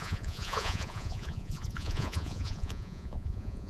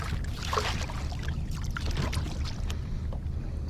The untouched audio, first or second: second